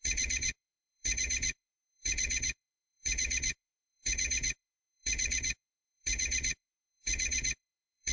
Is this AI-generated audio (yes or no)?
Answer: yes